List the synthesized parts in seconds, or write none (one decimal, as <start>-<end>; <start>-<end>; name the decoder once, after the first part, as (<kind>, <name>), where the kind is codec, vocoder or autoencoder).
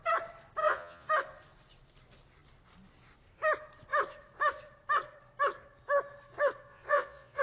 0.6-1.1 (vocoder, Vocos); 6.7-7.4